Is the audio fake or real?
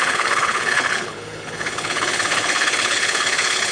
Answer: fake